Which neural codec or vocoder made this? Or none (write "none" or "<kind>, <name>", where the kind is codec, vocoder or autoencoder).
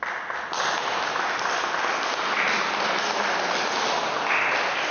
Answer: none